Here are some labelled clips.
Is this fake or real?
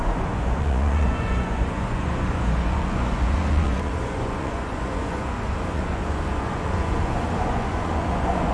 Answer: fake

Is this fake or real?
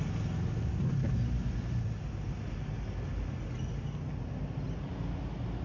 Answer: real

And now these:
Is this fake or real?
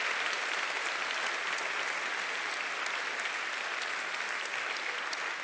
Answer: real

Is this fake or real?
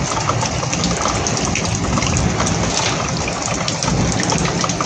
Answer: real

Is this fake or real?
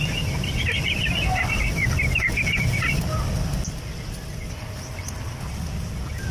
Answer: real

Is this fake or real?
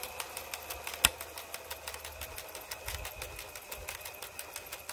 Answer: real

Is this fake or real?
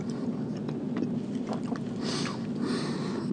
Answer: real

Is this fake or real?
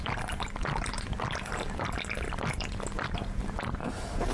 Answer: fake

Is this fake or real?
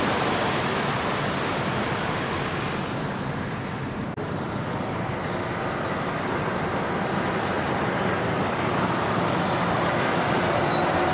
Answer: real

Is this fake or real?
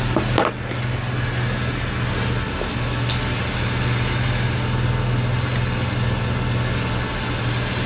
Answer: real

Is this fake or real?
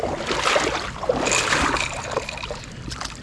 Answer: real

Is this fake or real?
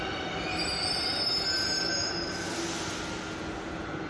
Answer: real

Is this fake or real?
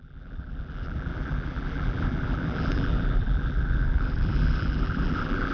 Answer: fake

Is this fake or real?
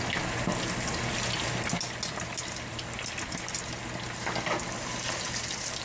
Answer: real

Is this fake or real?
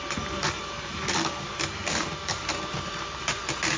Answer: fake